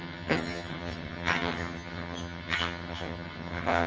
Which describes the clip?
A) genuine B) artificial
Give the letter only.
B